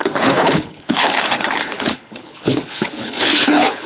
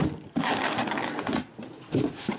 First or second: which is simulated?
first